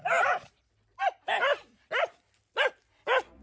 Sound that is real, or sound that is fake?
real